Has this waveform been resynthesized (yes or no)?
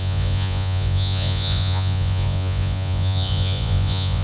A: yes